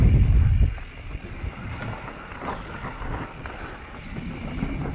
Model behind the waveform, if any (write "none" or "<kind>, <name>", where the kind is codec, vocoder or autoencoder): none